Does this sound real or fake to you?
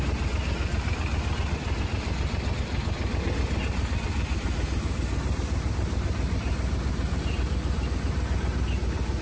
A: real